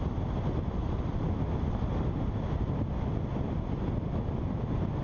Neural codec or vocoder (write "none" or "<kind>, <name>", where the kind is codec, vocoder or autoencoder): none